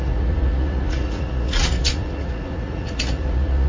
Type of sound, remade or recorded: remade